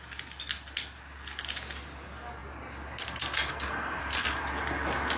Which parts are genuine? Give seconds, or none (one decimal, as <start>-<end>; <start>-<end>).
0.0-3.5; 4.0-5.2